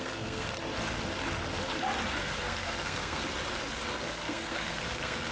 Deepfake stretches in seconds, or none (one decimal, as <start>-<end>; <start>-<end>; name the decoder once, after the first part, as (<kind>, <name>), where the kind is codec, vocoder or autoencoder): 0.0-0.7 (codec, SNAC); 2.2-3.2; 4.0-5.3

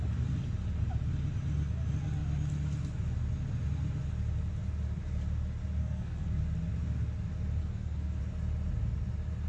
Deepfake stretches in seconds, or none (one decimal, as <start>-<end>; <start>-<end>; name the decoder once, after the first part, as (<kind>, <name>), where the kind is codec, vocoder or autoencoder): 5.8-6.4 (codec, SNAC); 7.6-8.2

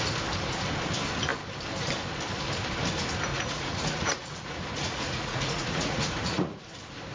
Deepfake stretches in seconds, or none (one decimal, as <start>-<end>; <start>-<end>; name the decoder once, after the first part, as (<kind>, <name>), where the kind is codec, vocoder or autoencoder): 3.3-6.6 (vocoder, Vocos)

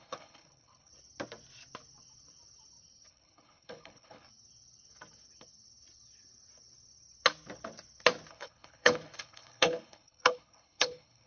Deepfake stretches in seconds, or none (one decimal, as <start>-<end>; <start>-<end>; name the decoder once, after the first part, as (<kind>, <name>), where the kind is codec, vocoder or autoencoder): 0.0-0.9 (codec, HILCodec); 3.1-4.3; 8.3-11.3

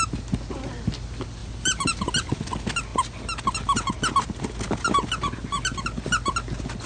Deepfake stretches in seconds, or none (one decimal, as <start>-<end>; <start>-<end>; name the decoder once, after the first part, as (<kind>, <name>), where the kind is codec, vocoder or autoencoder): 1.4-2.4 (vocoder, BigVGAN v2)

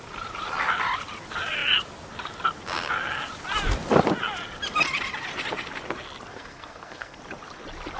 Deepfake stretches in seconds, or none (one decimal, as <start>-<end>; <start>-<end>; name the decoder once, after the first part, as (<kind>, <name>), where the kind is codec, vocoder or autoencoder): 6.3-7.2 (codec, SNAC)

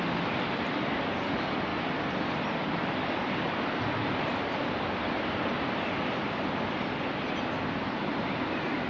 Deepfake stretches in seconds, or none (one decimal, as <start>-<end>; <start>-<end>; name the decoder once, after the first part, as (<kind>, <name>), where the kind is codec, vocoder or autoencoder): none